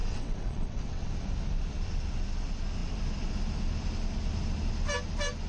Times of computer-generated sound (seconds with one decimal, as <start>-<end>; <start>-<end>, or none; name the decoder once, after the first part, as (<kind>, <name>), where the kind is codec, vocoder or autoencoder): 0.0-1.1 (vocoder, WaveNeXt)